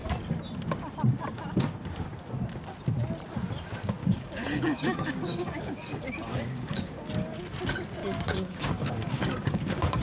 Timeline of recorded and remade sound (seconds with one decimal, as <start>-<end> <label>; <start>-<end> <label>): 0.0-4.0 recorded; 4.0-7.0 remade; 7.0-8.0 recorded; 8.0-10.0 remade